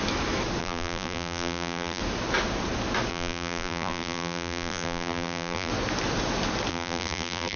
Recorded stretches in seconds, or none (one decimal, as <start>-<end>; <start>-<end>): 0.0-0.6; 2.0-3.1; 5.7-6.7